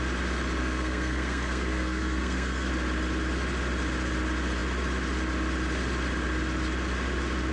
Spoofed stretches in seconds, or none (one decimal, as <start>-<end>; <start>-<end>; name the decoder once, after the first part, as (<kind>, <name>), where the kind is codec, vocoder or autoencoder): 0.6-2.7 (codec, SNAC)